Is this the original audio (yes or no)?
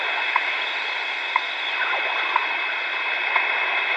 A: no